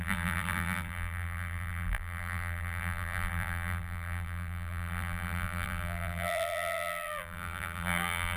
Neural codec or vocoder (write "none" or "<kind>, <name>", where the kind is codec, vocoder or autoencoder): vocoder, BigVGAN v2